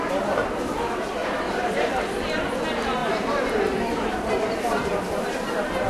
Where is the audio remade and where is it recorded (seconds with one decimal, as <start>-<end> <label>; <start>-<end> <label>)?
0.0-1.2 recorded; 1.2-1.9 remade; 1.9-5.9 recorded